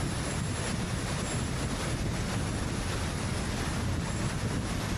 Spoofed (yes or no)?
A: no